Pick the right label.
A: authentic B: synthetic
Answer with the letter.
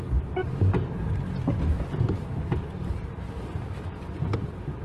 A